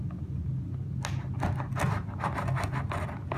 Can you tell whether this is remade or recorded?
recorded